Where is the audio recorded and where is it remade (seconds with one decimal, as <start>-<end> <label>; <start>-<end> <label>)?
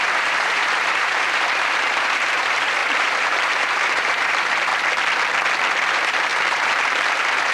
0.0-4.7 remade; 4.7-5.7 recorded; 5.7-7.5 remade